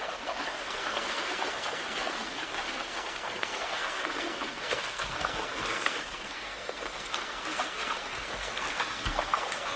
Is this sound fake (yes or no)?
yes